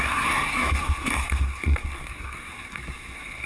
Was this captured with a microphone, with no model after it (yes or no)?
no